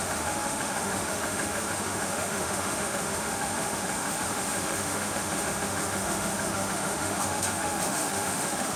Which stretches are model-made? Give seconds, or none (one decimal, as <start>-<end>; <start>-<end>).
0.0-8.8